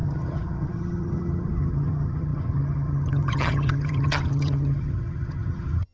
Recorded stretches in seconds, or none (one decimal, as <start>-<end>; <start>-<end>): none